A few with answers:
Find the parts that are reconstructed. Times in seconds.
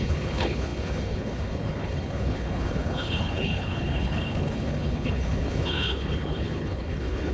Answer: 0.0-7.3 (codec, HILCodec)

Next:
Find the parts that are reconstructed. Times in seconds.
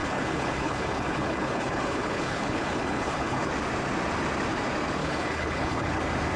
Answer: 0.0-3.5 (codec, HILCodec); 5.0-6.0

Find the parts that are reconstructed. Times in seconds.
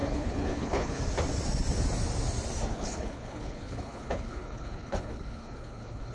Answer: 0.0-1.0 (codec, HILCodec); 2.7-6.1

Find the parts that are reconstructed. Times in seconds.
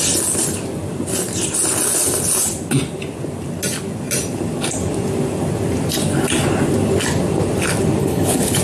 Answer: 8.0-8.6 (codec, HILCodec)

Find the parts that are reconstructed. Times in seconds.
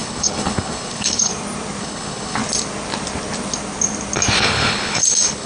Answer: 0.0-1.3 (codec, HILCodec); 1.8-2.4; 4.4-5.5